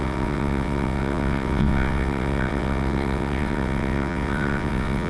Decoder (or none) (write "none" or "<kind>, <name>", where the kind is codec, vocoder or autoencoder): vocoder, WaveNeXt